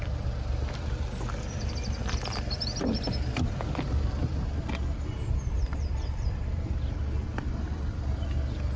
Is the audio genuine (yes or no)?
no